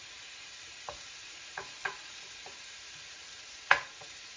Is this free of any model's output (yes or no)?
no